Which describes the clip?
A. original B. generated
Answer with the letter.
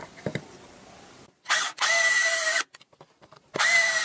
A